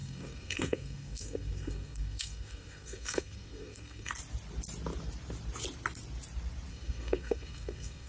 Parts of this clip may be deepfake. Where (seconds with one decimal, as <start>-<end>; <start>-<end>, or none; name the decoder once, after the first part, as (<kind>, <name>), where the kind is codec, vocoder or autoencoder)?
0.0-4.1 (codec, SNAC); 6.7-8.1